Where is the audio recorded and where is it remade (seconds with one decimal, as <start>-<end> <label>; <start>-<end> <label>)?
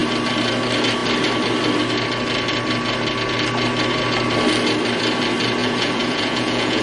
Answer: 0.0-5.6 recorded; 5.6-6.8 remade